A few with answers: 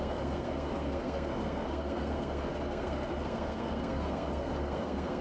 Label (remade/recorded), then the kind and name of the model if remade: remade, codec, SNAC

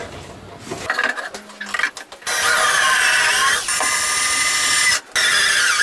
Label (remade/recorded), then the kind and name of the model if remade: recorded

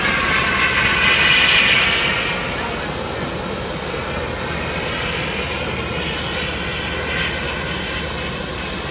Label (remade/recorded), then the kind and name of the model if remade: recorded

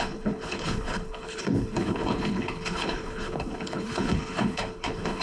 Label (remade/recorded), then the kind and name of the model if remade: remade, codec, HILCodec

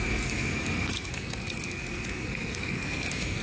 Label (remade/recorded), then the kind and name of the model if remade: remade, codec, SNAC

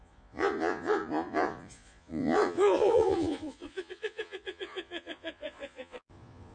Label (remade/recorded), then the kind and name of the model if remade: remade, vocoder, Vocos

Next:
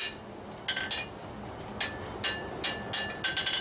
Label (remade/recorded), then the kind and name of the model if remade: recorded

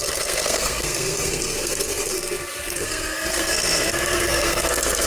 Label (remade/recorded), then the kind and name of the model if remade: remade, codec, SNAC